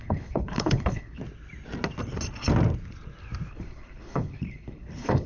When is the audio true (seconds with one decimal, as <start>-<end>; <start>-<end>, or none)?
1.2-3.5